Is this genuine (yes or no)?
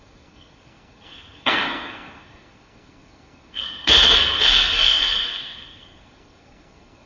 no